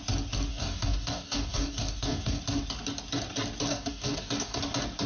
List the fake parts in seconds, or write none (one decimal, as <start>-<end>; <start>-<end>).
0.5-2.4; 3.7-4.6